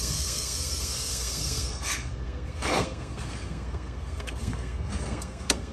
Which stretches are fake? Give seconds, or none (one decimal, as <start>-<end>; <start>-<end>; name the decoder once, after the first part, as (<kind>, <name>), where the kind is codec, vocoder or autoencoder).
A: 0.0-5.7 (codec, SNAC)